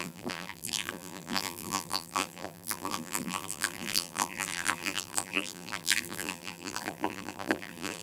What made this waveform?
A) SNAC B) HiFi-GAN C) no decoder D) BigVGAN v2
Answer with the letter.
D